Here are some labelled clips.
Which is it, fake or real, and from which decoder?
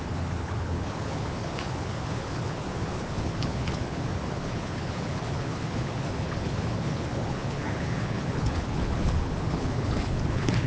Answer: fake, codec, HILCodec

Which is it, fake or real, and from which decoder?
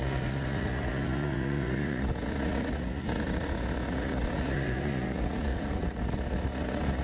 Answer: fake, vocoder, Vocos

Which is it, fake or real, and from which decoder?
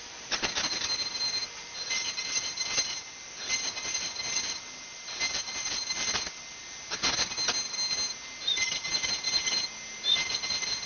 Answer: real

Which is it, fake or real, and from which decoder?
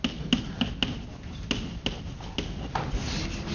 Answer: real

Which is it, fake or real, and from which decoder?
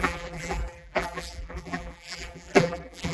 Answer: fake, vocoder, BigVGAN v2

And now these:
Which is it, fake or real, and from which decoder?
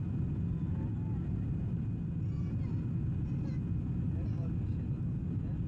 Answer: real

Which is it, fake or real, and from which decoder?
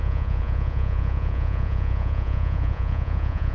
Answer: fake, vocoder, Vocos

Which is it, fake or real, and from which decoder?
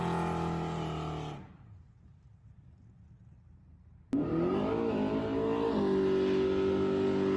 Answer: real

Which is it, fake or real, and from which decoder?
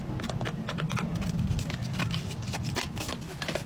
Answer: real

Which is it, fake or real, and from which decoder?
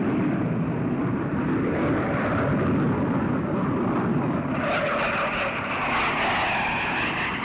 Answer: real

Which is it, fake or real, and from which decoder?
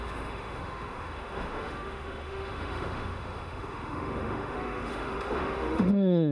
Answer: fake, autoencoder, DAC-VAE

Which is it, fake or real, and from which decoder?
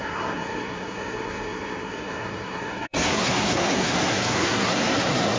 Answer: fake, codec, SNAC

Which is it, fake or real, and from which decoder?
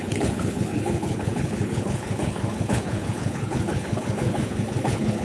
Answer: fake, codec, HILCodec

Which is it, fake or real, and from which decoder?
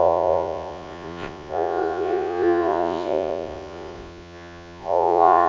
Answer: fake, vocoder, Vocos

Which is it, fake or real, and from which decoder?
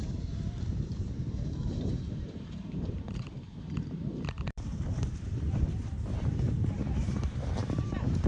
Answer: fake, vocoder, BigVGAN v2